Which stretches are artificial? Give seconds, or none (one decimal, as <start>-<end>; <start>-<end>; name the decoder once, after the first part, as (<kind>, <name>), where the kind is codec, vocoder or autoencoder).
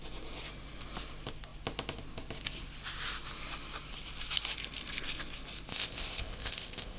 5.7-7.0 (codec, ZipCodec)